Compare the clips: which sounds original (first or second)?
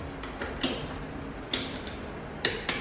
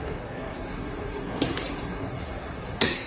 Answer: first